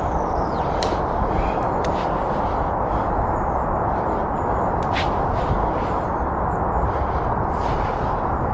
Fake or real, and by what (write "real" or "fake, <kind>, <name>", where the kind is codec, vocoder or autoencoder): real